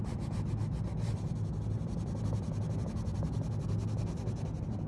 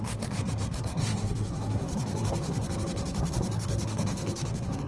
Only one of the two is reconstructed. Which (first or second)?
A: second